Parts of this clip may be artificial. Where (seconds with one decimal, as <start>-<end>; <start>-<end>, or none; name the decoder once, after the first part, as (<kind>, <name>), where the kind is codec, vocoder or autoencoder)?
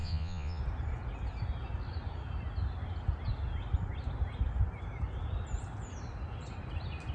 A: 0.0-0.6 (vocoder, Vocos)